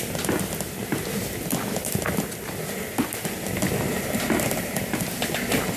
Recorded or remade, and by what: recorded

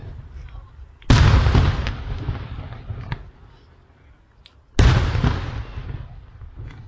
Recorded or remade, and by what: recorded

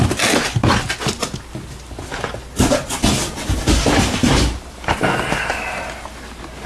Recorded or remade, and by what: recorded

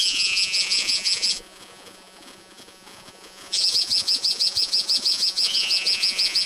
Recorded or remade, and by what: remade, vocoder, Vocos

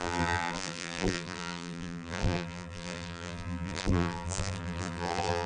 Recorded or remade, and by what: remade, vocoder, BigVGAN v2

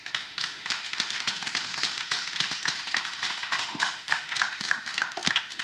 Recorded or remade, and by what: remade, autoencoder, DAC-VAE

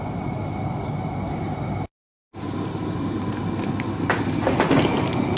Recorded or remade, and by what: recorded